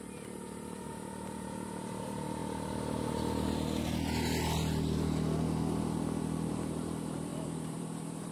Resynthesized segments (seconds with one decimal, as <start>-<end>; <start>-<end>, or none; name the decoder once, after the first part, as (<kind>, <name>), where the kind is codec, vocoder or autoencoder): 0.0-2.4 (vocoder, BigVGAN v2); 6.5-8.3